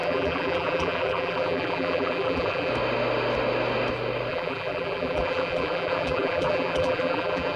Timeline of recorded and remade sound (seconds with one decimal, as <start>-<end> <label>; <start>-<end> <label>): 0.0-2.7 remade; 2.7-4.3 recorded; 4.3-7.6 remade